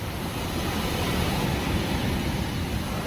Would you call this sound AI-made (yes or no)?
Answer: no